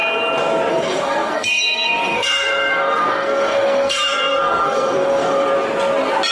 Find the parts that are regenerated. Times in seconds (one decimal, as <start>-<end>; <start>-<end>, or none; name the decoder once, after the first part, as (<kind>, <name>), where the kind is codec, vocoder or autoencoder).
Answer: 0.7-5.5 (codec, SNAC)